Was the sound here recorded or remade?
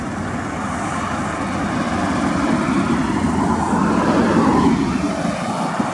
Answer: recorded